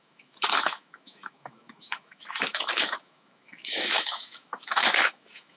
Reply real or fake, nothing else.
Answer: fake